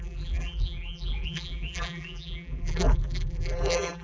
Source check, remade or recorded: remade